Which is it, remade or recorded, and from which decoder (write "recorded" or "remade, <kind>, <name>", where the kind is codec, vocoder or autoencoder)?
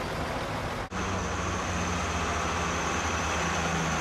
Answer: recorded